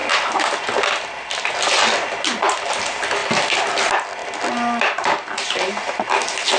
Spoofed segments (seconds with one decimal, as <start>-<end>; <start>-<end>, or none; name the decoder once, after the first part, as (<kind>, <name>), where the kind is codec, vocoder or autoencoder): none